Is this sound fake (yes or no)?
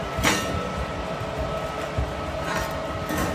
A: no